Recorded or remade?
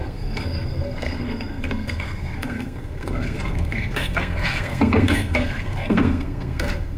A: remade